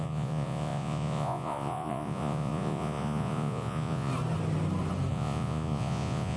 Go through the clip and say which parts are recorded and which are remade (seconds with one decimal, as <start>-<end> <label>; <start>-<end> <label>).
0.0-4.1 remade; 4.1-5.1 recorded; 5.1-6.4 remade